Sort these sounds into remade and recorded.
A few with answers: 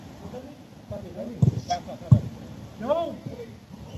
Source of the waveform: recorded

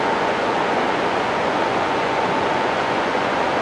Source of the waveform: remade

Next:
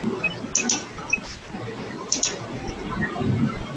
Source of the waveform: recorded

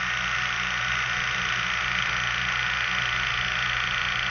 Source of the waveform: recorded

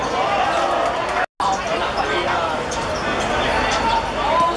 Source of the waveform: recorded